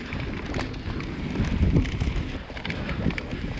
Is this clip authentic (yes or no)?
yes